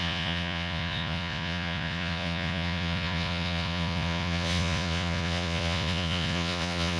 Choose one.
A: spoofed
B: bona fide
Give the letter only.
A